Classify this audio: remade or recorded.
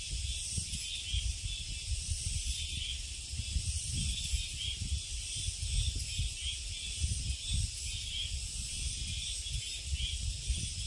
recorded